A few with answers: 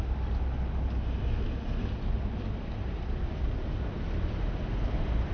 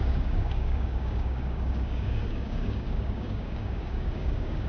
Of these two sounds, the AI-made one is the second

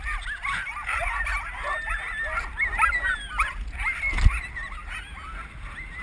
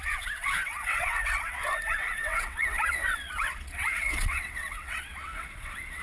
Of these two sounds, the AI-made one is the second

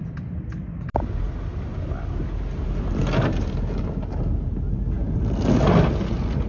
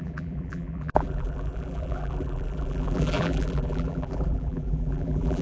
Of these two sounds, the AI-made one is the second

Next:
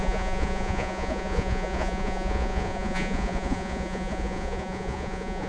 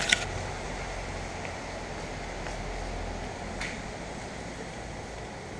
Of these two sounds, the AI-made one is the first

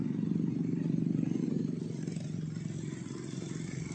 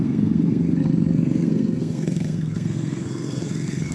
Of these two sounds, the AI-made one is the second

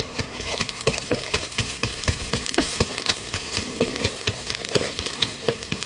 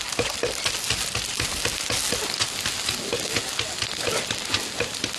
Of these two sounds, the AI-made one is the first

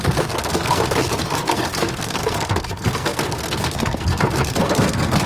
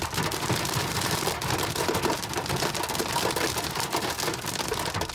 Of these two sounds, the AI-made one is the first